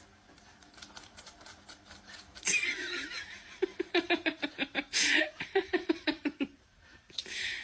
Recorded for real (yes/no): no